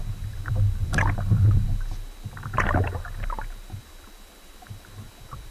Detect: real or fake real